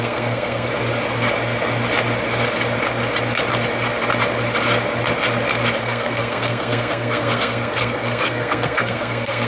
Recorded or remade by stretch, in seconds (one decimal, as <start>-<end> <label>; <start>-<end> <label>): 0.0-0.7 remade; 0.7-5.8 recorded; 5.8-9.5 remade